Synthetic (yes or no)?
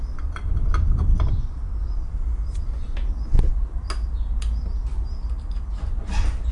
no